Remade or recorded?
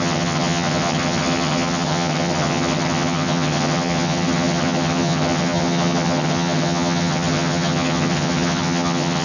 remade